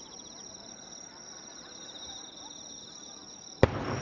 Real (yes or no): yes